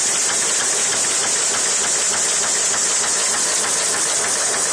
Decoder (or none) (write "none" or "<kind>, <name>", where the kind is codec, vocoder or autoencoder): none